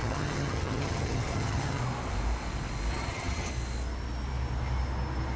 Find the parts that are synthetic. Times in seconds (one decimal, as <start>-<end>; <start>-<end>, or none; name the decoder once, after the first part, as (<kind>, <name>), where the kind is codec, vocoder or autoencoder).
0.0-1.8 (vocoder, HiFi-GAN); 2.9-3.5